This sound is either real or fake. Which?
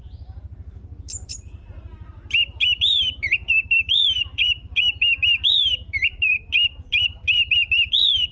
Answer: fake